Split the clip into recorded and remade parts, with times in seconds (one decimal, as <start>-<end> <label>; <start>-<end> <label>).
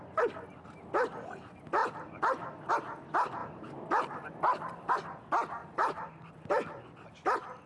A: 0.0-3.4 recorded; 3.4-4.9 remade; 4.9-5.6 recorded; 5.6-6.3 remade; 6.3-7.7 recorded